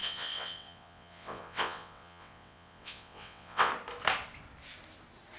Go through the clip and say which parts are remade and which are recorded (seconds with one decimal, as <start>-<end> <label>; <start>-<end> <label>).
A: 0.0-3.7 remade; 3.7-5.4 recorded